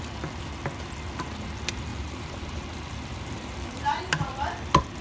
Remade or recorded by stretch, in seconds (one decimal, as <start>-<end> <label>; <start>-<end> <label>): 0.0-1.9 recorded; 1.9-4.0 remade; 4.0-5.0 recorded